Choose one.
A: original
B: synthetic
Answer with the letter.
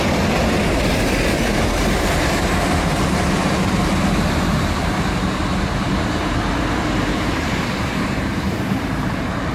B